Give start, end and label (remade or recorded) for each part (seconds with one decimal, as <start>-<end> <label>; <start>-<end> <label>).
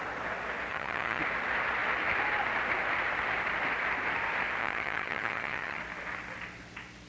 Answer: 0.0-0.7 recorded; 0.7-1.2 remade; 1.2-4.6 recorded; 4.6-5.8 remade; 5.8-7.1 recorded